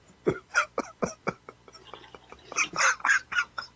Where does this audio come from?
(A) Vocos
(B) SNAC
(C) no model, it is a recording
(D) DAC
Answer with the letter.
C